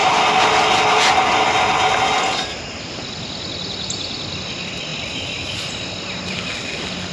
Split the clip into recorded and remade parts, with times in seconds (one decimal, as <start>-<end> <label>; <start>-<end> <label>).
0.0-7.1 recorded